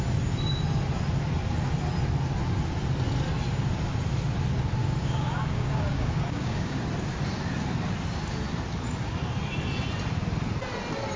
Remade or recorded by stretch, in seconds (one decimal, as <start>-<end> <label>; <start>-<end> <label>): 0.0-4.8 recorded; 4.8-6.8 remade; 6.8-11.2 recorded